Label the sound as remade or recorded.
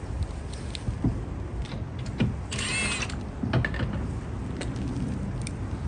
recorded